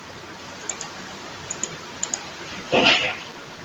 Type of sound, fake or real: fake